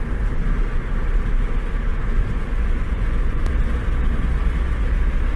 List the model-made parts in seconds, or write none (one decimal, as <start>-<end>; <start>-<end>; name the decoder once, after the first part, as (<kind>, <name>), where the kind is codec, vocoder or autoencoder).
1.9-3.5 (vocoder, Vocos)